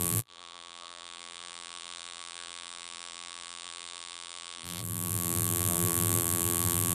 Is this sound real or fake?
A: fake